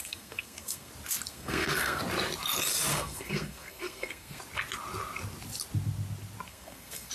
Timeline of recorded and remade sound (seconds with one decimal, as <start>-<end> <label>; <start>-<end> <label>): 0.0-0.9 remade; 0.9-1.3 recorded; 1.3-2.0 remade; 2.0-2.9 recorded; 2.9-4.4 remade; 4.4-6.5 recorded; 6.5-7.1 remade